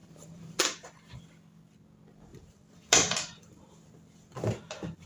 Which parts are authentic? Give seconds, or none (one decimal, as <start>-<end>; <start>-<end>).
0.6-2.3; 3.9-5.1